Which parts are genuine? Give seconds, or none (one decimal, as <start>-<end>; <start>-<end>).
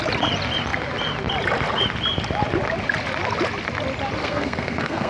0.0-4.2